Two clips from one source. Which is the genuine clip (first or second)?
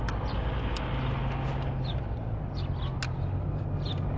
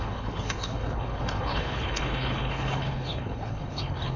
first